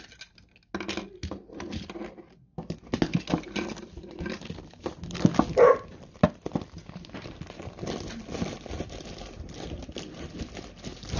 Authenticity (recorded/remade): recorded